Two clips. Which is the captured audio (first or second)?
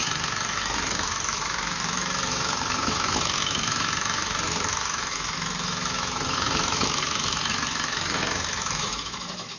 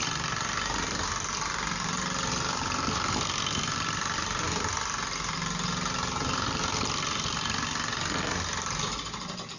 second